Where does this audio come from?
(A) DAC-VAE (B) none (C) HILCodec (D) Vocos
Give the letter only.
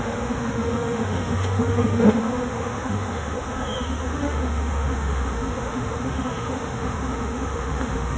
A